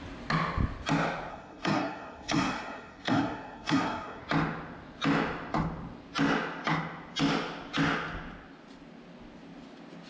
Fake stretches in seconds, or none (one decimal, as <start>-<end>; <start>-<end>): 1.3-4.2